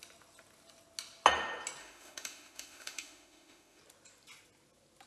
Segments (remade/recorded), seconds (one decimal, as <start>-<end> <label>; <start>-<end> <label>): 0.0-1.8 recorded; 1.8-3.8 remade; 3.8-5.1 recorded